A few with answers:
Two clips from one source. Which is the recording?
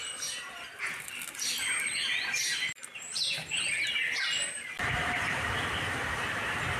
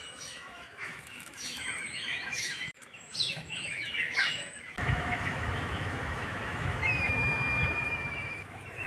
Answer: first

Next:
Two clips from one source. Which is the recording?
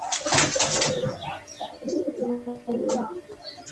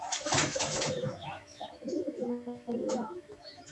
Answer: first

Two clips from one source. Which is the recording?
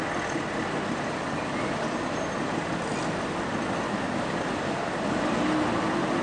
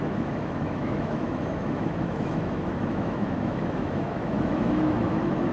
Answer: first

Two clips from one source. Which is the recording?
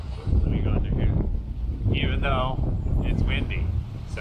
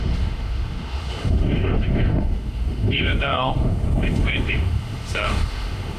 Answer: first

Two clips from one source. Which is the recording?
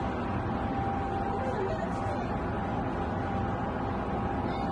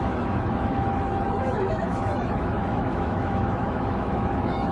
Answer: first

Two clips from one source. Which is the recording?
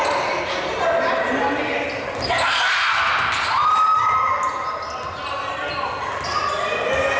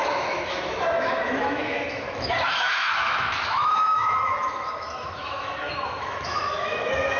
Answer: first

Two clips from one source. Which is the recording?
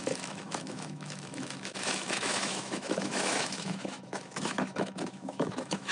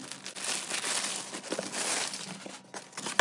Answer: second